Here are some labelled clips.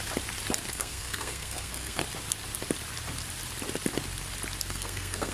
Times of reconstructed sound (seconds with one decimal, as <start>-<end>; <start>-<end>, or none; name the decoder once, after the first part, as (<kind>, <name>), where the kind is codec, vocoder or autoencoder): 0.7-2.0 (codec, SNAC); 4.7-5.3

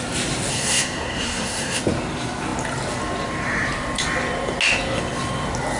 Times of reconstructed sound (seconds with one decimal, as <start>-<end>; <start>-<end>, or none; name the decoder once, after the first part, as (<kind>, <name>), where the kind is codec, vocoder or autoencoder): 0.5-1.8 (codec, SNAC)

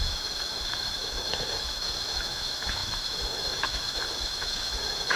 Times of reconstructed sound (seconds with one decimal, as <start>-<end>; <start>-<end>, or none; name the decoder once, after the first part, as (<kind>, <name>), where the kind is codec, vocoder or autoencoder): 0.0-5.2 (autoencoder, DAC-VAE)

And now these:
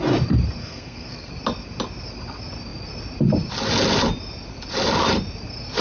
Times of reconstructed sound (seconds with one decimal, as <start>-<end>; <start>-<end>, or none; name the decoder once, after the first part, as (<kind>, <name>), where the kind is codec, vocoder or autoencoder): 0.6-1.3 (codec, SNAC)

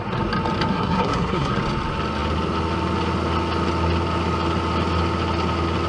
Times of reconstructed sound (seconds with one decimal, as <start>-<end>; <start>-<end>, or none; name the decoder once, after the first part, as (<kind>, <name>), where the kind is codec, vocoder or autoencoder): 0.7-1.5 (codec, SNAC)

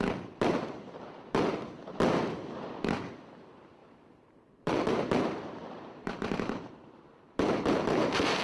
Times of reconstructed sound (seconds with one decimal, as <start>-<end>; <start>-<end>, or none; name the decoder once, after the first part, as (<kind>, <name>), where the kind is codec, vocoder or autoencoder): 3.8-4.9 (vocoder, BigVGAN v2); 5.6-8.4